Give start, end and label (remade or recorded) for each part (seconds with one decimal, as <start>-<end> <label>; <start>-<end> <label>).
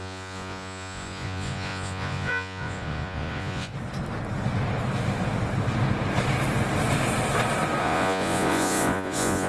0.0-3.7 remade; 3.7-7.8 recorded; 7.8-9.5 remade